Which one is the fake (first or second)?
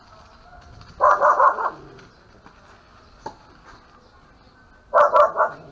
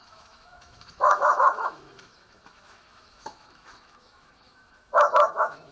second